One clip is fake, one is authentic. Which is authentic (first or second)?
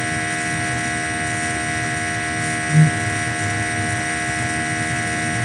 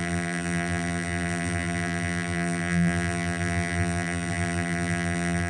first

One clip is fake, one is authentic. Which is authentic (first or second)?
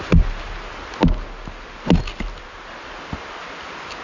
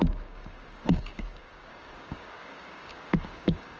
first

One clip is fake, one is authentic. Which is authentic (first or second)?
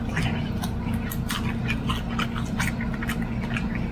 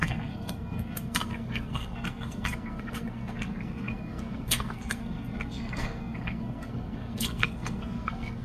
first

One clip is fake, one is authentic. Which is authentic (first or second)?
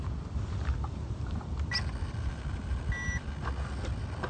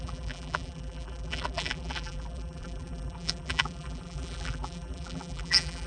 first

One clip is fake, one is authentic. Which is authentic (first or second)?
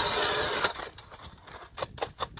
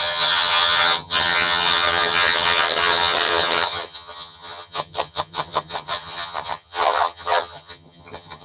first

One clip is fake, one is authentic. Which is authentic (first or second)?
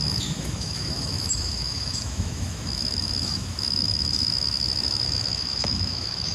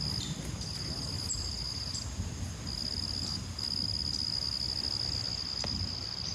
second